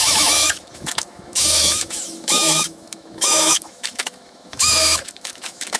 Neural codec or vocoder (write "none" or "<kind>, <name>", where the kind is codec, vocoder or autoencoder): autoencoder, DAC-VAE